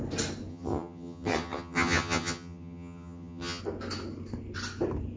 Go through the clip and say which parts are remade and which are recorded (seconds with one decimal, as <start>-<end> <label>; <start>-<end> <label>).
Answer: 0.0-0.5 recorded; 0.5-3.6 remade; 3.6-5.2 recorded